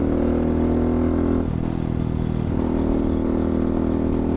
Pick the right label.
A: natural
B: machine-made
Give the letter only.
A